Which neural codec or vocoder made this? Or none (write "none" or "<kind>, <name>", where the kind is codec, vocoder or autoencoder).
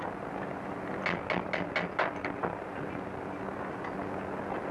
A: none